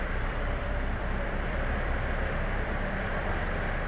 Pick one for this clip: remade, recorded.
remade